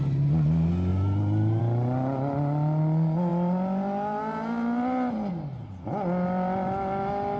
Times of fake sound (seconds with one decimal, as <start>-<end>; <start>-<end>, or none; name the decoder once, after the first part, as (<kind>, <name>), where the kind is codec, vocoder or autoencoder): none